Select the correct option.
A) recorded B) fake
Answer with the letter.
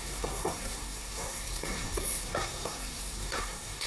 B